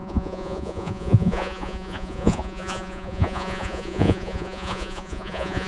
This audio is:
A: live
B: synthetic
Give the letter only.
B